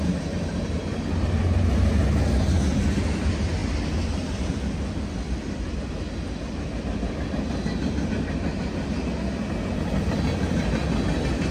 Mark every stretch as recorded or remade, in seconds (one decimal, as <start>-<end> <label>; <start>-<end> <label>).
0.0-11.5 recorded